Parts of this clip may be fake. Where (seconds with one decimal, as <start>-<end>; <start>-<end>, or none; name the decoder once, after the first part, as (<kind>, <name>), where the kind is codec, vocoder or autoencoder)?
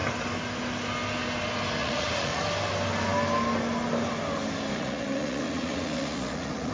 1.8-2.4 (vocoder, Vocos); 4.7-6.7